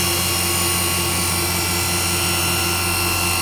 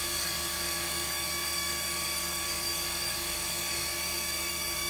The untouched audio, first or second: first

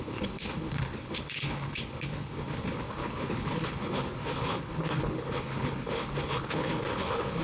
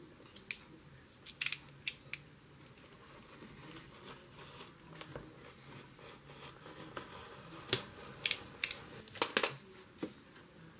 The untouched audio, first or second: second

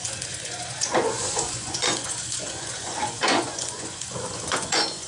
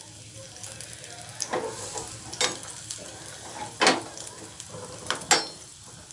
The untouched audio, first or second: second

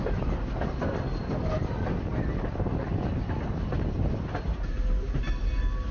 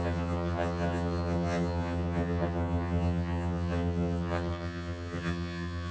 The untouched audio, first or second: first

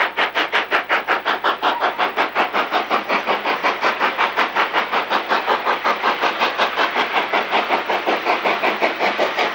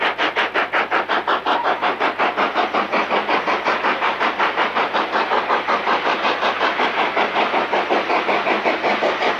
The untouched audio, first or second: second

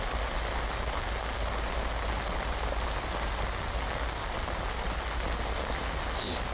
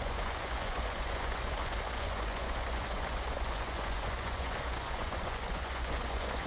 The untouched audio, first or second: first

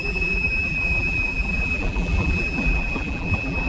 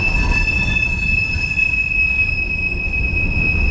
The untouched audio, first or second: second